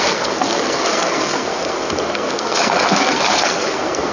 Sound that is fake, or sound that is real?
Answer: fake